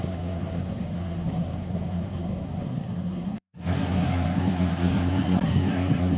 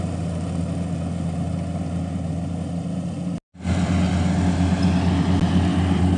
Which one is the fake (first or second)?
first